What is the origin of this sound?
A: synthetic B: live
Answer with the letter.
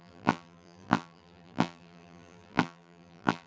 A